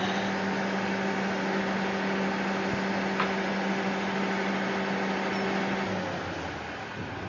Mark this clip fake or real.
real